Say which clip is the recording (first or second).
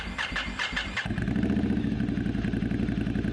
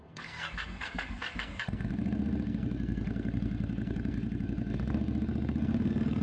first